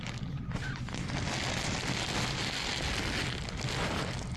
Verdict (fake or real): real